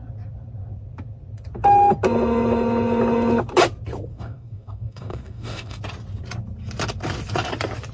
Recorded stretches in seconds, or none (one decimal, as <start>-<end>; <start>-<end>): 0.0-4.1; 5.8-7.9